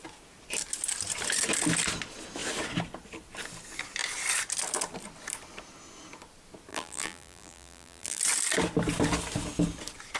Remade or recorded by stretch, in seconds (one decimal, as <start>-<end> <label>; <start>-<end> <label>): 0.0-6.7 recorded; 6.7-8.2 remade; 8.2-10.2 recorded